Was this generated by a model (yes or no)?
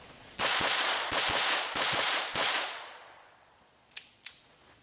yes